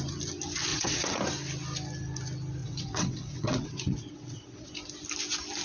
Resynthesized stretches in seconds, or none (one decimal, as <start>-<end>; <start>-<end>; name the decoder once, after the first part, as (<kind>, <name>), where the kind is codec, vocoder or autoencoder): 0.7-1.2 (vocoder, WaveNeXt); 2.6-4.7